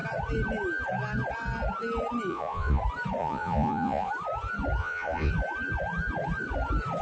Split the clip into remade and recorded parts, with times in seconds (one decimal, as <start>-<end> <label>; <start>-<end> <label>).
0.0-2.3 recorded; 2.3-2.8 remade; 2.8-3.2 recorded; 3.2-4.1 remade; 4.1-4.8 recorded; 4.8-5.3 remade; 5.3-7.0 recorded